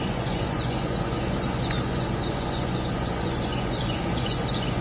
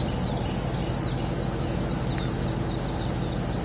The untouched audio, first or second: second